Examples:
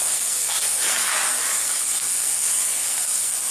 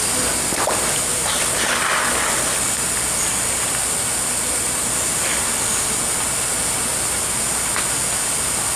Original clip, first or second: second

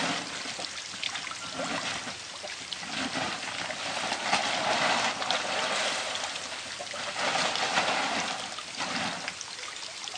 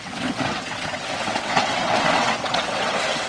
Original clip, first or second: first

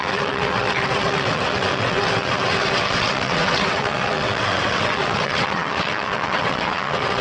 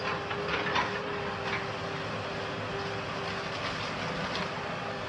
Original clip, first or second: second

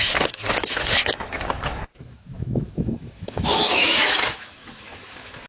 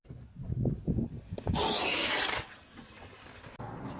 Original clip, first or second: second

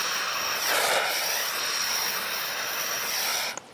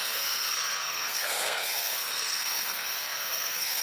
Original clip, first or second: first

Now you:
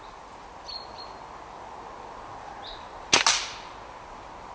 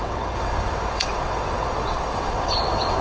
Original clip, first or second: first